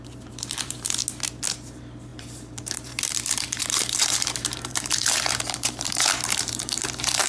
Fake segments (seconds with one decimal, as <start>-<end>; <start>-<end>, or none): 0.0-1.0; 1.5-7.3